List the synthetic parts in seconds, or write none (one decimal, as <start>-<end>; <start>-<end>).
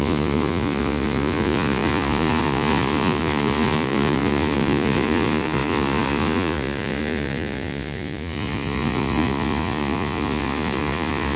0.0-11.4